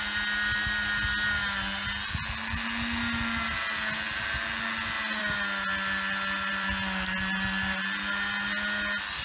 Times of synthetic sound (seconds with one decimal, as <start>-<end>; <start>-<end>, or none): none